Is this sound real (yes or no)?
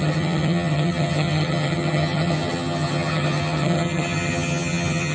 no